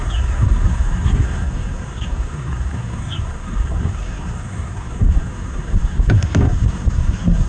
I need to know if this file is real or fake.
fake